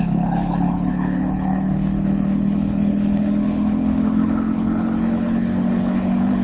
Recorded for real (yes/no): no